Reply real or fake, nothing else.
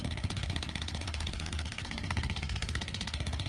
fake